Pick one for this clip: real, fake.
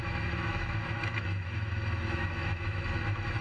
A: fake